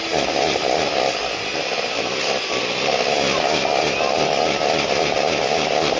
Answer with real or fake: real